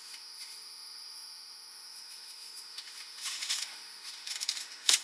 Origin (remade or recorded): remade